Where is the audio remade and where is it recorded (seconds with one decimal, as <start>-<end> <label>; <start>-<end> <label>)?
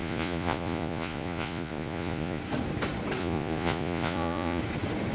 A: 0.0-2.4 remade; 2.4-3.2 recorded; 3.2-4.6 remade; 4.6-5.1 recorded